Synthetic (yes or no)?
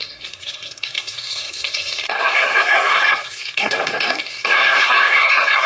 yes